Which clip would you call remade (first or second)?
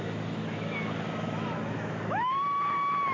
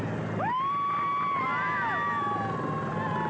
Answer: first